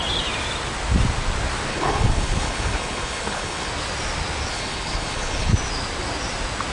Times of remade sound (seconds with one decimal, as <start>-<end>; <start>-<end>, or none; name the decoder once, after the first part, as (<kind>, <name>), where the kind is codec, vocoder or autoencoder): 1.7-3.7 (codec, HILCodec); 4.5-5.5